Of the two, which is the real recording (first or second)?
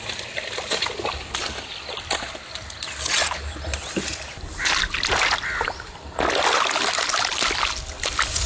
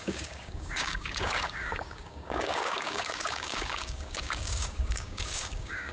first